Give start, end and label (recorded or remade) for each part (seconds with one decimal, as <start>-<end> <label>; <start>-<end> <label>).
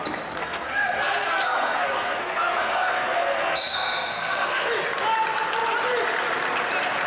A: 0.0-0.4 recorded; 0.4-4.7 remade; 4.7-7.1 recorded